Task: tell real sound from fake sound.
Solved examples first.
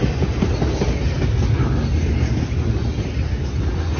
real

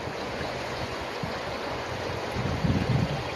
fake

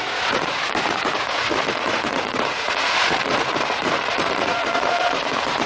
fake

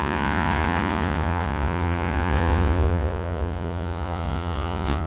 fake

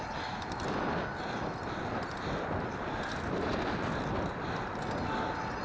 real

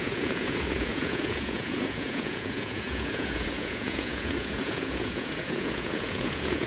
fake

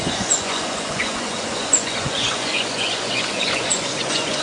fake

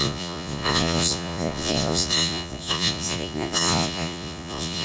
fake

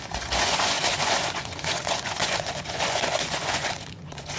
fake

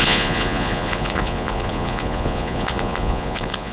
fake